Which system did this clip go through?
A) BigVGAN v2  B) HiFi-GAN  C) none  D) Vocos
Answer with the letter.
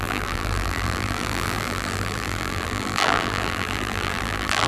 A